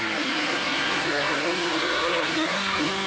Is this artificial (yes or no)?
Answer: yes